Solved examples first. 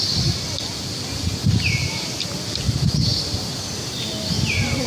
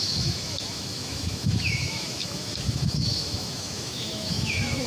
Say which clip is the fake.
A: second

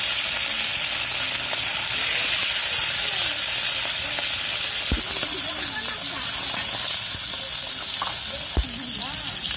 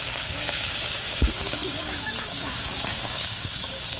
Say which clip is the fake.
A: second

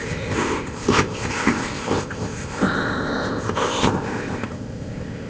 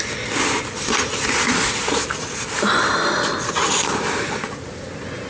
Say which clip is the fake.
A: first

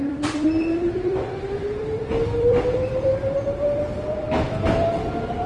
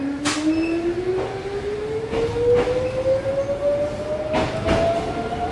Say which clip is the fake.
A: first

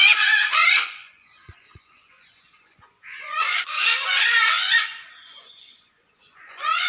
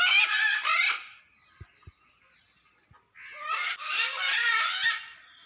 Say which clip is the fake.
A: first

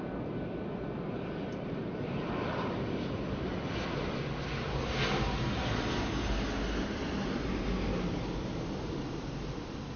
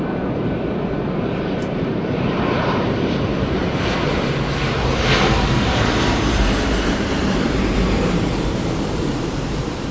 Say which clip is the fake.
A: second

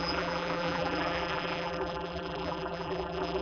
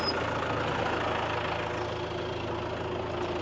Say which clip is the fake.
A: first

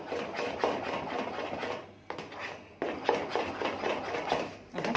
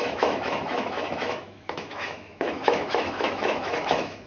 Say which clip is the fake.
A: second